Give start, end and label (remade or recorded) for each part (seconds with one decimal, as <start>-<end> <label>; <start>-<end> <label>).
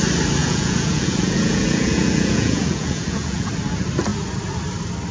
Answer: 0.0-0.4 recorded; 0.4-3.5 remade; 3.5-5.1 recorded